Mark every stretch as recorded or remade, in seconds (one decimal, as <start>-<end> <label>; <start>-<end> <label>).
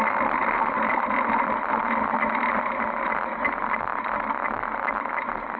0.0-5.6 recorded